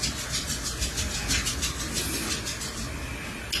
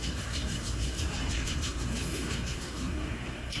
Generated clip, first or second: second